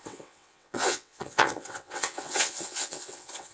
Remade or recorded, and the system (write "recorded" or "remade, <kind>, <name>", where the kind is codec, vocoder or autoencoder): remade, vocoder, WaveNeXt